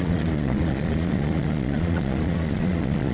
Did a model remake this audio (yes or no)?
yes